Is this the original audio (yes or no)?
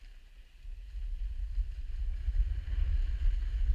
yes